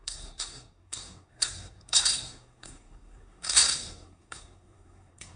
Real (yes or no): no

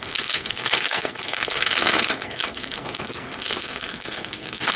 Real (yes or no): no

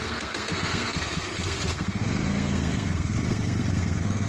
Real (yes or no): no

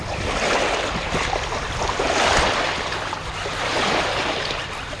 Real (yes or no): yes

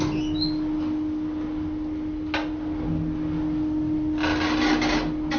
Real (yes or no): yes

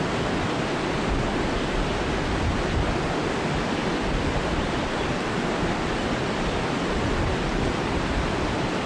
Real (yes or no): yes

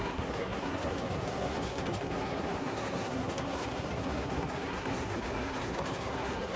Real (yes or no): no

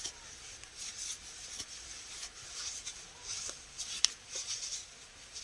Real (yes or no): yes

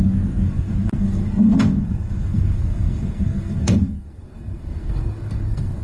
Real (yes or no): no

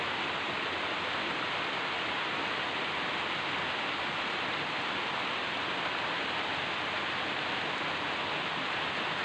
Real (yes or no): yes